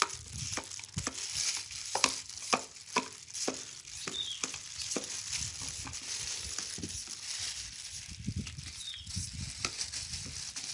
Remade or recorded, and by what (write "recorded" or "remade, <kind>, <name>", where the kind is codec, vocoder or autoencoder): recorded